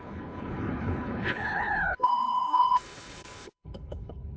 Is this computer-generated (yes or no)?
yes